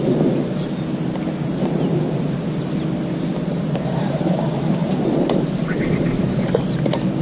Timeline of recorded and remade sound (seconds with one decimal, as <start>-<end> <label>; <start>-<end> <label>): 0.0-7.2 recorded